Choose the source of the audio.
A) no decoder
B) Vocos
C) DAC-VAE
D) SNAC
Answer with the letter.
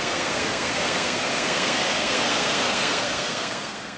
D